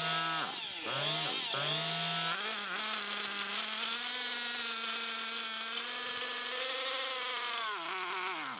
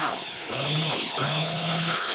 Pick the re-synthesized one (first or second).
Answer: second